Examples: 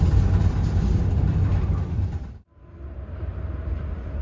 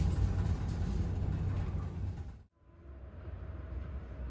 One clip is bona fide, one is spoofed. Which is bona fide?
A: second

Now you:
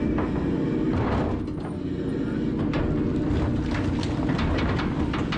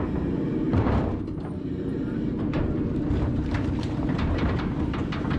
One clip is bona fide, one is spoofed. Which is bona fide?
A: first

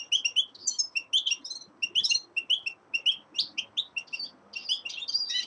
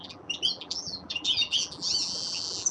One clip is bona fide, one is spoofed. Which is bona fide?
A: first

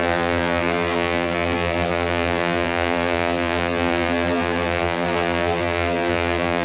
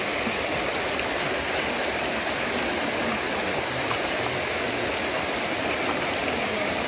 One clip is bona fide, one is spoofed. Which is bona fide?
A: second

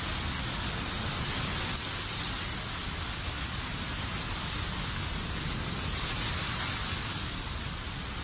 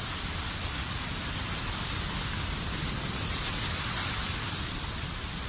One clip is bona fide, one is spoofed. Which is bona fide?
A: first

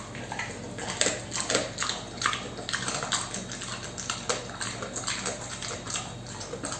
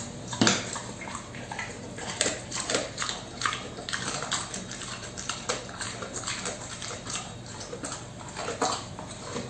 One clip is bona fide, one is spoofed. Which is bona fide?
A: first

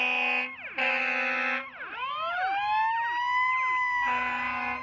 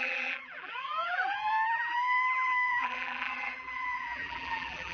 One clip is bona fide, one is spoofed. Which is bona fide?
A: first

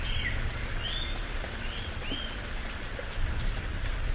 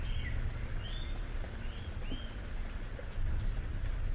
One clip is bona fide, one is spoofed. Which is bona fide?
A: second